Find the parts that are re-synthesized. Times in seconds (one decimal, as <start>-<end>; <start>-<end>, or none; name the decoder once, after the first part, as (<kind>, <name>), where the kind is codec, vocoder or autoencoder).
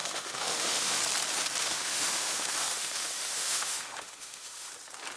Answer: 0.0-1.0 (autoencoder, DAC-VAE); 1.6-4.7